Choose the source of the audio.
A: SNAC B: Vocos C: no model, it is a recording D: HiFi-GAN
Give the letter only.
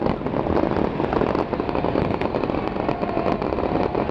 C